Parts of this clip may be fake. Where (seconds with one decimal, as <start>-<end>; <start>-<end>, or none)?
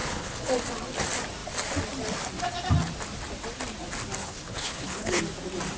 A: 0.0-0.5; 4.2-5.2